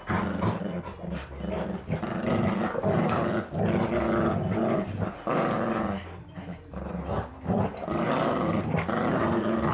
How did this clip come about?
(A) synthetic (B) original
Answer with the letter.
B